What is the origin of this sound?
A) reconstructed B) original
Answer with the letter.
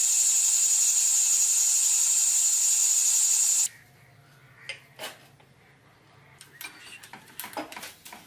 B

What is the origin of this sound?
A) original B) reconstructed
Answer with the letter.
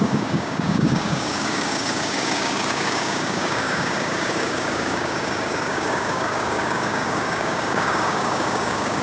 B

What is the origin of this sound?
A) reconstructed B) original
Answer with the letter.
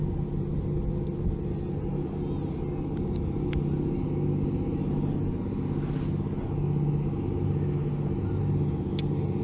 B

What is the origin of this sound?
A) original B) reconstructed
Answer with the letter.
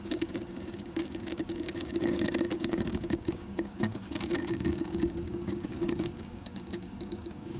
B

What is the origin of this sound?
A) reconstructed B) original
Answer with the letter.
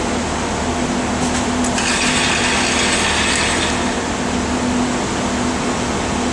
B